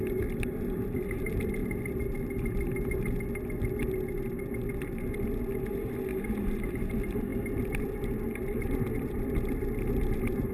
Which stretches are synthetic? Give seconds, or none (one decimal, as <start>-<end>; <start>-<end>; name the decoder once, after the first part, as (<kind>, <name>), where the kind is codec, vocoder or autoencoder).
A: 0.0-1.6 (vocoder, BigVGAN v2); 6.7-10.5